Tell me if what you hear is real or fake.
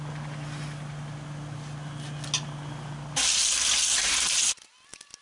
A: real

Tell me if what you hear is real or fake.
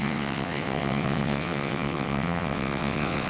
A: fake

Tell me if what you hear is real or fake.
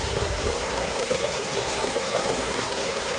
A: fake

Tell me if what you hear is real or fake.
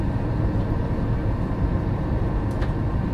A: real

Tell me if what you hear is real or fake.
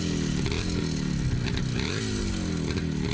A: real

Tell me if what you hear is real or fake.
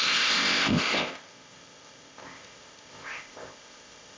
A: fake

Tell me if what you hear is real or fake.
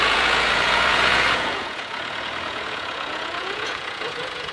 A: fake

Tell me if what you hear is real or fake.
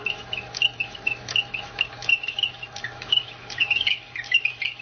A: fake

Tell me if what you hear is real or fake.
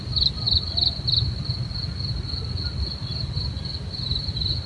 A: real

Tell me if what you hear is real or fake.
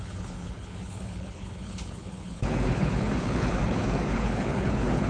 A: fake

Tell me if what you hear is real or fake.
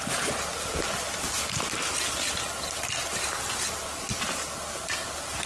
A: real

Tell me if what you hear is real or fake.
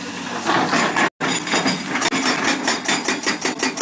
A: real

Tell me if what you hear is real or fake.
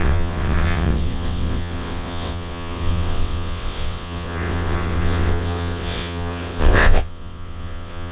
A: fake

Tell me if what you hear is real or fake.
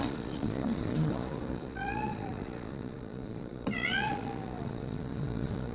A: fake